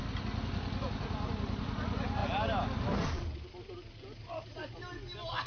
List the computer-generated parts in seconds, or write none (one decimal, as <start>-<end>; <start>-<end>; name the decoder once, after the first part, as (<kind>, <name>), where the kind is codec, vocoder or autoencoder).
none